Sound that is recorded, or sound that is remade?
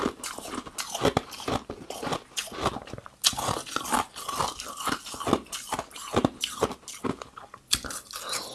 recorded